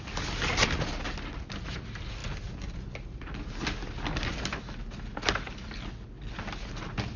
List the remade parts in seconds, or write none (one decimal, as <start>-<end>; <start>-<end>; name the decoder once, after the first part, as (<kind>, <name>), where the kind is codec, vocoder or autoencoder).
none